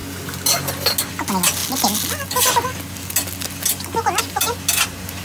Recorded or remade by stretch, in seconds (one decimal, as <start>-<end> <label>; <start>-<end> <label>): 0.0-5.2 recorded

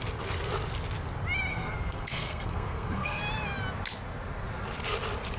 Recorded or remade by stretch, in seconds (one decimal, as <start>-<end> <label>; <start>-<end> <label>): 0.0-1.5 recorded; 1.5-3.2 remade; 3.2-5.4 recorded

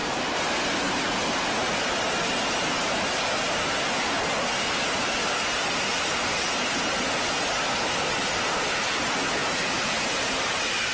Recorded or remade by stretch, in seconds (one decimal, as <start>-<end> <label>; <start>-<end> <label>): 0.0-10.9 recorded